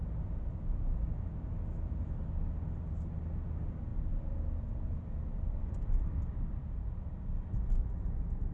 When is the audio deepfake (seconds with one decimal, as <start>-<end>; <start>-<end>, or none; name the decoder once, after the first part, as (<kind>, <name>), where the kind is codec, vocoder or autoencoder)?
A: 3.9-7.1 (vocoder, BigVGAN v2)